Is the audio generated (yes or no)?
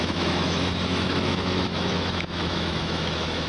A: yes